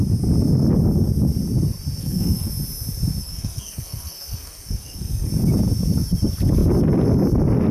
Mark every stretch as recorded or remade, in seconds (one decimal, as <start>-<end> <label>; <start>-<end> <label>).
0.0-2.0 recorded; 2.0-2.5 remade; 2.5-3.2 recorded; 3.2-5.3 remade; 5.3-7.7 recorded